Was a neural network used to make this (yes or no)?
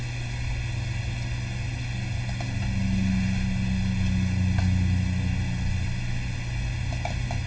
no